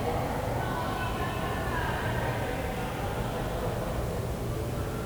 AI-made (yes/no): no